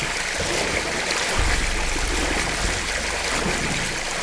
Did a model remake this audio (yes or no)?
no